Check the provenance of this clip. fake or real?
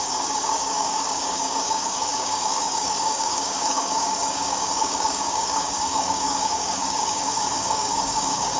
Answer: fake